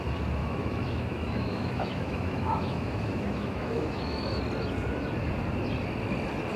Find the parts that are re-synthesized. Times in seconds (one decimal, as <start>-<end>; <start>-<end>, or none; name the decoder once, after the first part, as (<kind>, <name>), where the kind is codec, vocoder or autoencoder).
0.4-4.4 (autoencoder, DAC-VAE)